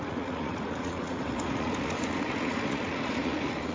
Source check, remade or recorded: remade